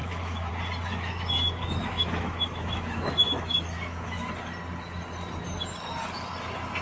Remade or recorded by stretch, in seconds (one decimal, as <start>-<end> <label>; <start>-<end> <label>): 0.0-0.5 remade; 0.5-0.9 recorded; 0.9-4.3 remade; 4.3-6.8 recorded